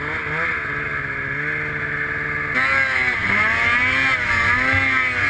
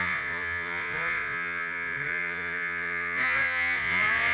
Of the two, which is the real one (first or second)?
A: first